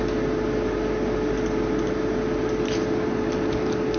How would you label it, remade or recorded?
recorded